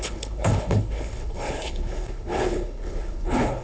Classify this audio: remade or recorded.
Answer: remade